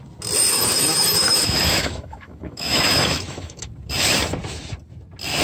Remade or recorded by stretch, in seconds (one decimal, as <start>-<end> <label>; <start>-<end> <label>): 0.0-0.5 recorded; 0.5-3.7 remade; 3.7-5.4 recorded